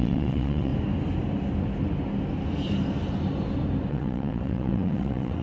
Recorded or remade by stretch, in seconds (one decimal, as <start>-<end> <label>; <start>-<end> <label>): 0.0-0.7 remade; 0.7-3.9 recorded; 3.9-5.4 remade